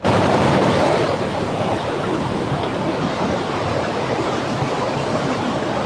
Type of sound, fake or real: fake